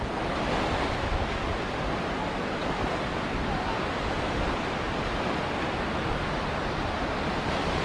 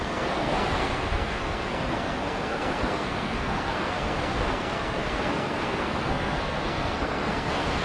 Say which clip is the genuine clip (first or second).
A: first